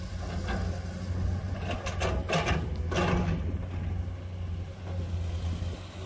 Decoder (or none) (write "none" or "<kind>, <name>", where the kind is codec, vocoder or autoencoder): none